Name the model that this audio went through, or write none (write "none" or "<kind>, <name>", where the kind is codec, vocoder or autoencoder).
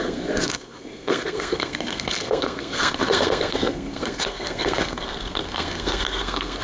codec, SNAC